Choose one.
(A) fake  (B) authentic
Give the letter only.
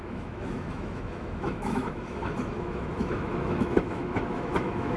A